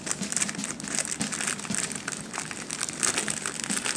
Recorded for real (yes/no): yes